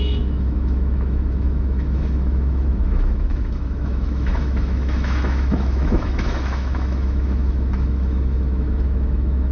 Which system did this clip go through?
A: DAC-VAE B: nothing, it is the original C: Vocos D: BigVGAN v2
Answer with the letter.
A